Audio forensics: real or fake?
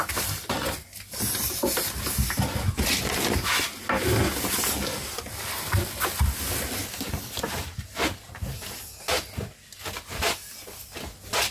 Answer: real